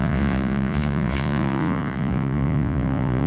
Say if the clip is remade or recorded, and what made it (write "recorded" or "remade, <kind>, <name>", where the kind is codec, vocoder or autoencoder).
remade, vocoder, Vocos